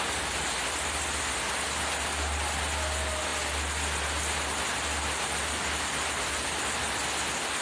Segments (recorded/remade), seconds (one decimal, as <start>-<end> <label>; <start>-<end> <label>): 0.0-7.6 recorded